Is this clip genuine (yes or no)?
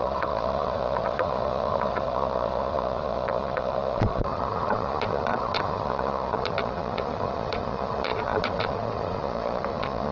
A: no